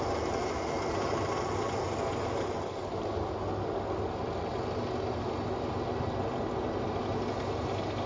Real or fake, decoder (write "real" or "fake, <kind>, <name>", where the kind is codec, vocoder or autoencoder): real